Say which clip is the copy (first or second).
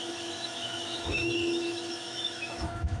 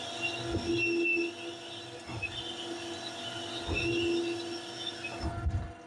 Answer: first